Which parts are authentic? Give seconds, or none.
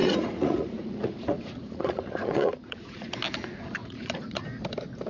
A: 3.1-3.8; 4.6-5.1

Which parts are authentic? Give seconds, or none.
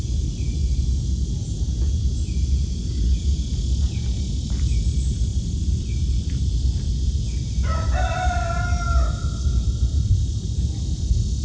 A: 0.0-5.3; 6.9-11.4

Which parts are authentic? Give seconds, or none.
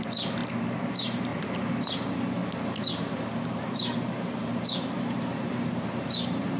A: 2.4-2.9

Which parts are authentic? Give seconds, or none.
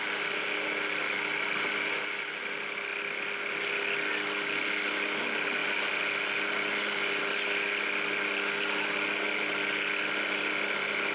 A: 0.0-11.1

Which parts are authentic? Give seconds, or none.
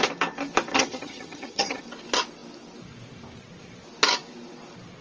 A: 0.0-0.7; 1.8-5.0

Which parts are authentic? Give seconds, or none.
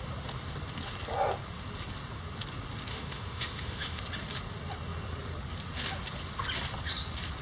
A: 0.0-2.9; 4.0-7.4